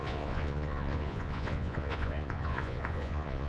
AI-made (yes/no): yes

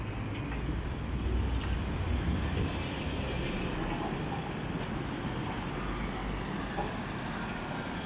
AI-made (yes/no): no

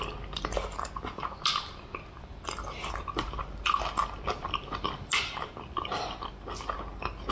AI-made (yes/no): no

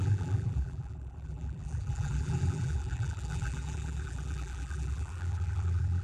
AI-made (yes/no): yes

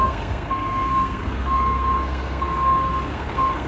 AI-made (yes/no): yes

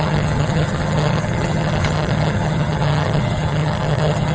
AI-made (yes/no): yes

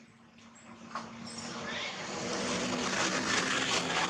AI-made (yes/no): no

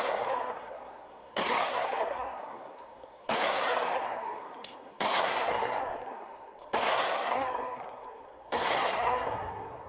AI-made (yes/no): yes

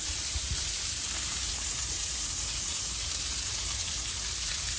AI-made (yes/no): yes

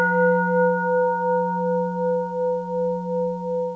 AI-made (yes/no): no